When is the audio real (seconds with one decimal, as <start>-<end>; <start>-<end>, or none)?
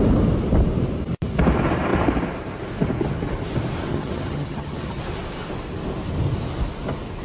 0.0-3.9; 5.0-7.2